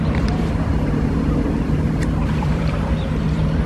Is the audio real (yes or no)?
no